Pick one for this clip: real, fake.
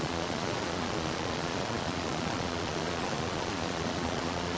fake